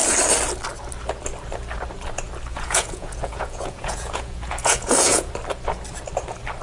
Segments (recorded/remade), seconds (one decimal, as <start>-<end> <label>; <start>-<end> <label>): 0.0-2.5 recorded; 2.5-5.3 remade; 5.3-6.6 recorded